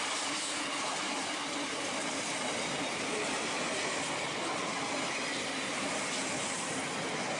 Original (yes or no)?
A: yes